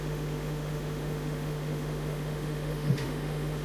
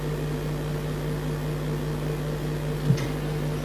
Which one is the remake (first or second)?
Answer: first